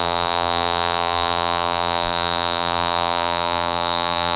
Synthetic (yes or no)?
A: yes